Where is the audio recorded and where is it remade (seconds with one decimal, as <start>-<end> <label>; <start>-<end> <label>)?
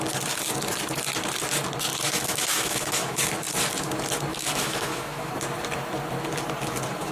0.0-1.9 recorded; 1.9-3.2 remade; 3.2-4.3 recorded; 4.3-5.3 remade; 5.3-7.1 recorded